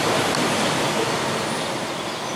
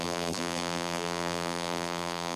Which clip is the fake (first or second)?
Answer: second